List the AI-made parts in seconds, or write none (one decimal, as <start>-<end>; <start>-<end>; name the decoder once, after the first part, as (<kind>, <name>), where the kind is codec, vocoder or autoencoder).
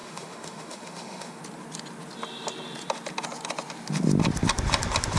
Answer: 0.0-1.4 (autoencoder, DAC-VAE)